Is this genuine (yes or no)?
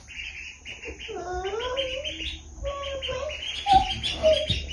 yes